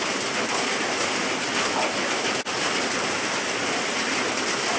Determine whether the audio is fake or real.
real